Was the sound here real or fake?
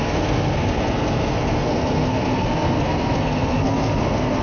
fake